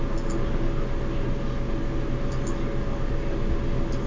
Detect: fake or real real